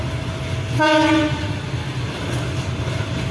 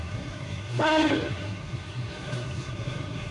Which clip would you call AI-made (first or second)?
second